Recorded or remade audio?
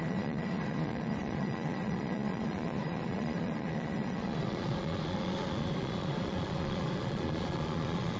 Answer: remade